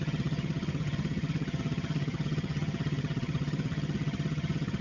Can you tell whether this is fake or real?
fake